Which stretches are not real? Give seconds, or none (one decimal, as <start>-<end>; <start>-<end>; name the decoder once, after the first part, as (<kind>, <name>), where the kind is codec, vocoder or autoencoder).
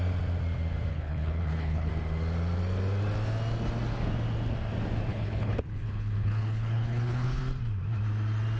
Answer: 0.9-1.9 (codec, HILCodec); 5.1-7.4